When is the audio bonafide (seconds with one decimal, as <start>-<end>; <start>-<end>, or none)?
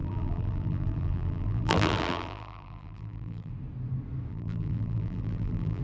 3.5-4.3